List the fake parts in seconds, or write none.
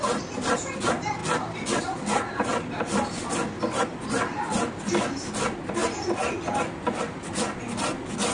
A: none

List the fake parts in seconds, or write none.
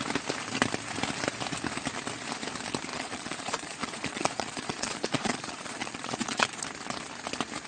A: 2.9-6.6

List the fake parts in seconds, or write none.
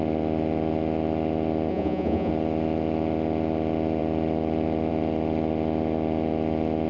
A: 1.7-2.3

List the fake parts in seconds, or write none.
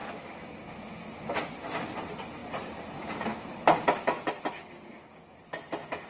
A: none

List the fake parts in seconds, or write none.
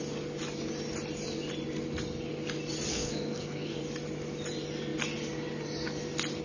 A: 2.9-3.8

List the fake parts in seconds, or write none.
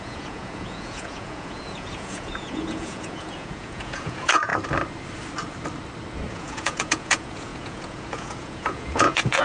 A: 0.0-4.5; 6.3-9.4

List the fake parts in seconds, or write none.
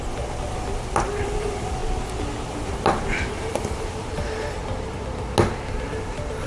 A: 0.0-1.8; 2.5-4.6; 5.7-6.5